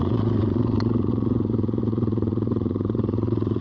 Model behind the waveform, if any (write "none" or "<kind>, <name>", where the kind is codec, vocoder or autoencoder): vocoder, Vocos